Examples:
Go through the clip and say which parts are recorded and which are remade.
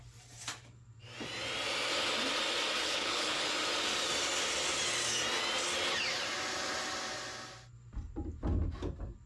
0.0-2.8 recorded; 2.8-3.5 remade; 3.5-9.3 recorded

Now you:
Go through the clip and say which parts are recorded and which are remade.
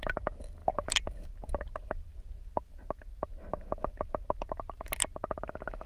0.0-5.9 recorded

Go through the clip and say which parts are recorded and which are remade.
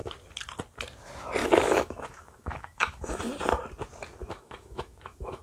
0.0-1.4 recorded; 1.4-3.2 remade; 3.2-4.2 recorded; 4.2-5.4 remade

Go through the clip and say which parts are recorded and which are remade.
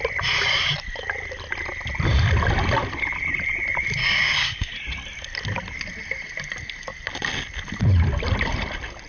0.0-4.0 recorded; 4.0-4.7 remade; 4.7-9.1 recorded